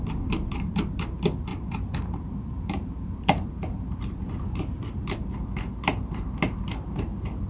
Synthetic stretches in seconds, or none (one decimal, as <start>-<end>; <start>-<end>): 1.5-5.3